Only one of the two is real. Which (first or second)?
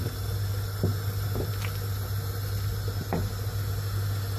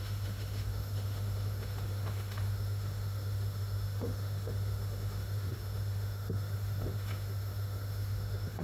first